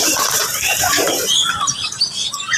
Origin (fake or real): fake